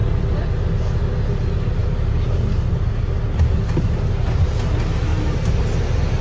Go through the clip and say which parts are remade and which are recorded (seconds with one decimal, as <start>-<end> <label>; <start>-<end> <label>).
0.0-1.8 recorded; 1.8-2.9 remade; 2.9-6.2 recorded